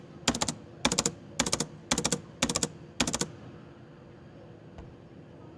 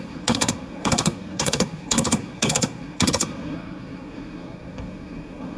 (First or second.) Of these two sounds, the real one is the first